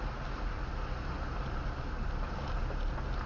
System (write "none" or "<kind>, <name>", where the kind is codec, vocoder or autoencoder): none